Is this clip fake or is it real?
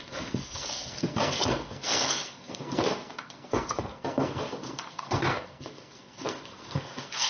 fake